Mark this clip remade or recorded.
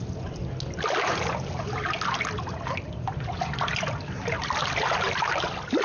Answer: recorded